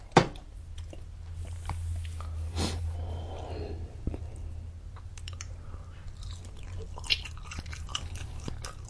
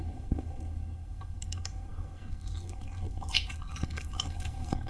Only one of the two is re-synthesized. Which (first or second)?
second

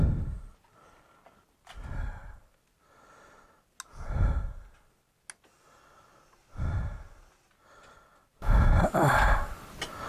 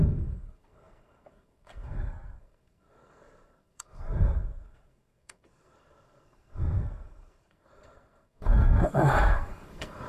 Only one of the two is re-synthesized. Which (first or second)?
second